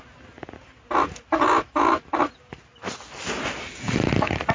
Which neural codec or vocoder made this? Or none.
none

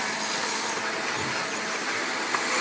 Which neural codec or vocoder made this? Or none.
none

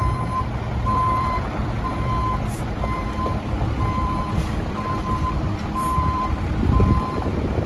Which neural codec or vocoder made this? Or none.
vocoder, BigVGAN v2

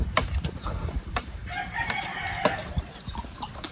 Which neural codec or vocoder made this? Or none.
vocoder, BigVGAN v2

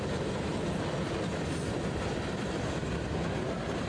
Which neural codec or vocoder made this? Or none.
vocoder, BigVGAN v2